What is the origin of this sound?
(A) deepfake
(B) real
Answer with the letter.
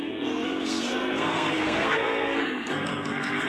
A